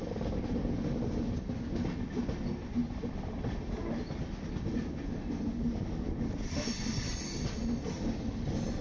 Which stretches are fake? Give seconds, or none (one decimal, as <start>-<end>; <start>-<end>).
none

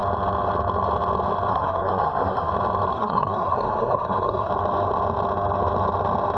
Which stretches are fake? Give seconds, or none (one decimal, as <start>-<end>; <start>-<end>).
1.5-2.5; 2.9-4.5

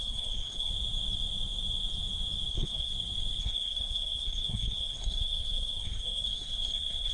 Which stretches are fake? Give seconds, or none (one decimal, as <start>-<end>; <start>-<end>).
0.0-0.7; 2.5-2.9; 3.4-7.1

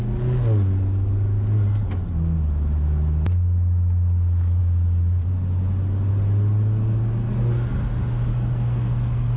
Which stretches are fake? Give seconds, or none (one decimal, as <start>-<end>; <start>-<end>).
8.3-9.4

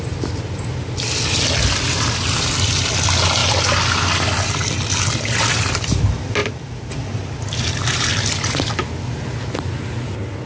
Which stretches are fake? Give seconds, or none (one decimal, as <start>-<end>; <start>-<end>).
none